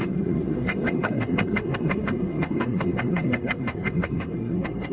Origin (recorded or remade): remade